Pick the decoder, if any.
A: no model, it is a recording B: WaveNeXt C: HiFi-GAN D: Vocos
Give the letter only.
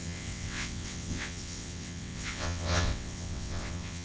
B